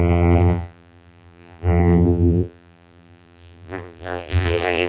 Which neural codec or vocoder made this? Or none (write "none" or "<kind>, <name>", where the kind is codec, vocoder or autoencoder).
vocoder, BigVGAN v2